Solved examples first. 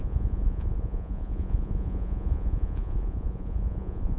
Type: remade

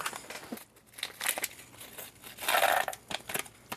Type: recorded